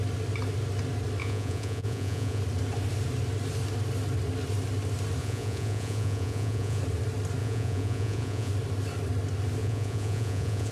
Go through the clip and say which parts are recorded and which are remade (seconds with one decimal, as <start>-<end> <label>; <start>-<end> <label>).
0.0-1.2 recorded; 1.2-2.4 remade; 2.4-5.2 recorded; 5.2-6.8 remade; 6.8-7.4 recorded; 7.4-8.5 remade; 8.5-9.6 recorded; 9.6-10.7 remade